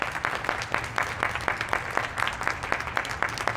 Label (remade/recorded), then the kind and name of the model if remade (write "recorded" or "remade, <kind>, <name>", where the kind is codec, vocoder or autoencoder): recorded